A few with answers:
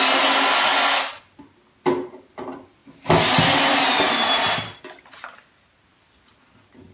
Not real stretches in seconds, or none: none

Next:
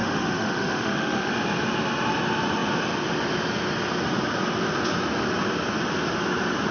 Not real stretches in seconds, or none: 0.0-1.3 (autoencoder, DAC-VAE)

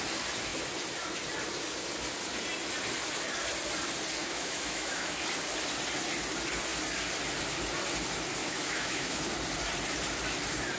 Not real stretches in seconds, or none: 4.2-5.2 (autoencoder, DAC-VAE); 8.4-9.2